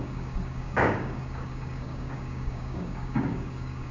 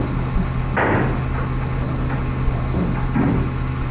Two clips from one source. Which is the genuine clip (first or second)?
second